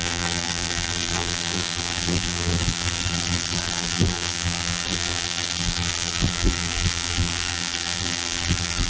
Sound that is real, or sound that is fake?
fake